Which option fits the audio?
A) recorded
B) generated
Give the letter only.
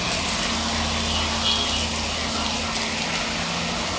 A